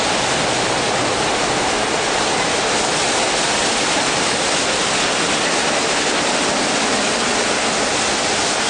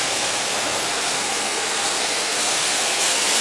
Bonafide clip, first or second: first